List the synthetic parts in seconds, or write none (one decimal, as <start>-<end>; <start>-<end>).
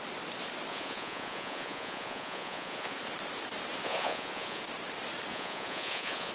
0.7-3.0; 3.8-4.6; 5.3-6.3